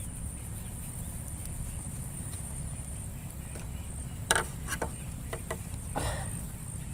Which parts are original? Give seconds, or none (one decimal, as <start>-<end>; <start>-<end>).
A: 0.0-4.0; 5.4-6.9